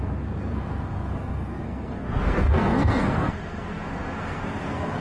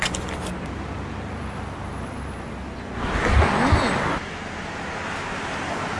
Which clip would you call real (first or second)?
second